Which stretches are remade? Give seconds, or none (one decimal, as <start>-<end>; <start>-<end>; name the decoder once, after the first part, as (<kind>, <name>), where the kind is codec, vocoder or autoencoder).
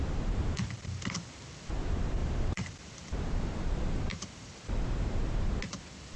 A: 2.2-4.8 (vocoder, BigVGAN v2)